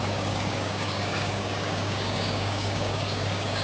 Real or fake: fake